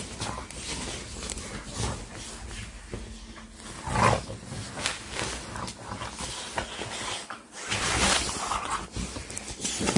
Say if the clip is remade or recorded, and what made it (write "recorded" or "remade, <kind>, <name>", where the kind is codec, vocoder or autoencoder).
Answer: recorded